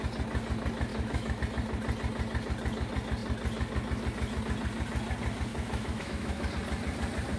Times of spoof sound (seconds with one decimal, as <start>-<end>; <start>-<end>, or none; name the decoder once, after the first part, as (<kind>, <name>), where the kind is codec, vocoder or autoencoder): 0.9-1.4 (autoencoder, DAC-VAE); 5.5-6.5